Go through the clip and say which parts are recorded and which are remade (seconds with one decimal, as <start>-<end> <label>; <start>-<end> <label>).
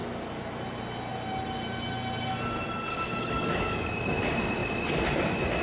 0.0-2.9 recorded; 2.9-3.9 remade; 3.9-5.6 recorded